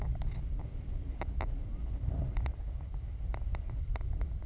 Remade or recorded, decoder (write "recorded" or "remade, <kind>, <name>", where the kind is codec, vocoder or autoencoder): recorded